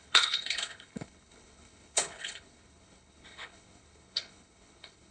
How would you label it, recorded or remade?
remade